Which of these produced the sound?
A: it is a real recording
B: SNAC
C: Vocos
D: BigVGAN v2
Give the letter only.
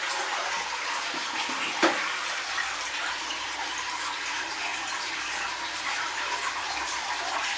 D